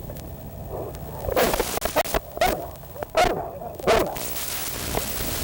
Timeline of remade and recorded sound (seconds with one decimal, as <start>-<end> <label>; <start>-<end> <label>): 0.0-5.4 recorded